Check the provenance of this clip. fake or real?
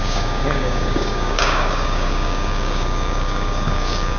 fake